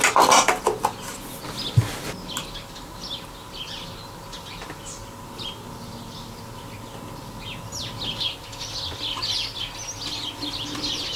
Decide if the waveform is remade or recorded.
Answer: recorded